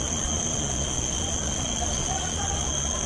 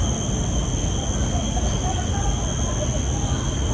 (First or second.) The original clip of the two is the second